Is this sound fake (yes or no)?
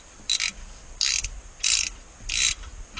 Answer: no